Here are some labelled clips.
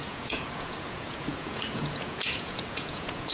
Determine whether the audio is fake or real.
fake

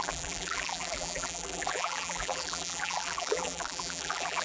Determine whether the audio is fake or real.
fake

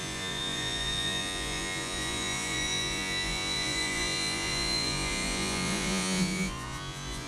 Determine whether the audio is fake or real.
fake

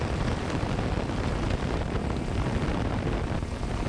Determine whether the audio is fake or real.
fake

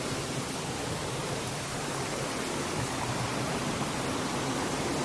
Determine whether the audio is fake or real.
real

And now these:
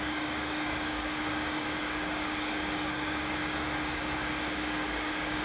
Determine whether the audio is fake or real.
fake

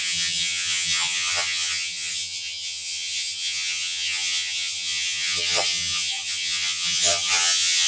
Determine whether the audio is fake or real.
fake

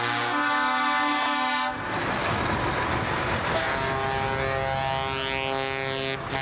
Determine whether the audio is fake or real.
real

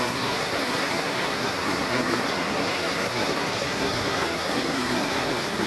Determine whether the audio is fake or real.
fake